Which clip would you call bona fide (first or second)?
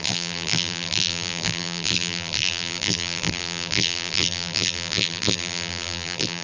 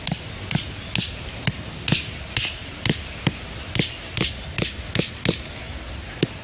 second